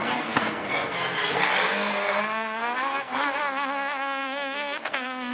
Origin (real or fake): fake